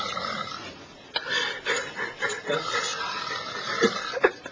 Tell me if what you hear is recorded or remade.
recorded